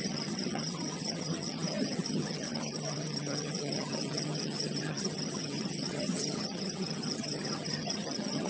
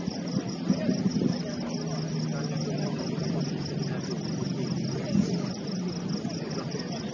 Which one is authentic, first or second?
second